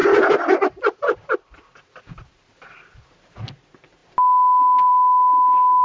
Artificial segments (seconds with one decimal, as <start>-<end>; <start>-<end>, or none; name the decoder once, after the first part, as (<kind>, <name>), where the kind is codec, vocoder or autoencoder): none